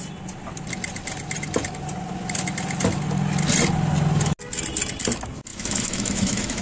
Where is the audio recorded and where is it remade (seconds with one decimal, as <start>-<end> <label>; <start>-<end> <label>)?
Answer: 0.0-5.5 recorded; 5.5-6.6 remade